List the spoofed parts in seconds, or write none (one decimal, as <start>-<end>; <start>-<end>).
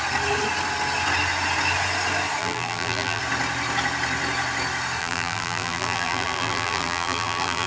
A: 2.4-3.2; 5.0-7.7